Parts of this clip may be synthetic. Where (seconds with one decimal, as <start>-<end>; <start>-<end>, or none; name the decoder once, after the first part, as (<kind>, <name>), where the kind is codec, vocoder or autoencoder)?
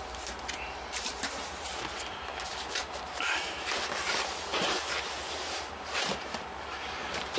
0.0-7.4 (vocoder, BigVGAN v2)